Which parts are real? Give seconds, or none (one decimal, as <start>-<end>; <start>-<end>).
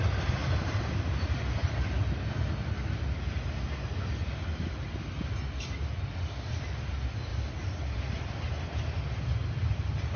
0.0-0.4; 1.0-7.3; 8.4-10.2